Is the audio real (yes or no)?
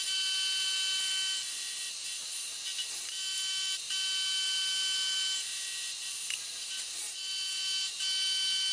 yes